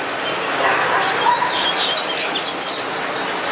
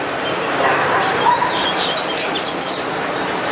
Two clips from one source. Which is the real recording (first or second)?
first